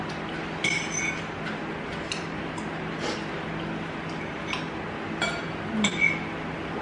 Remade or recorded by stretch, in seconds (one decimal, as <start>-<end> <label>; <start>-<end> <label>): 0.0-6.8 recorded